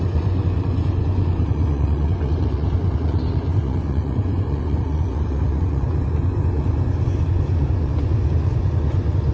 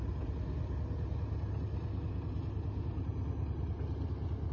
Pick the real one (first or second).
second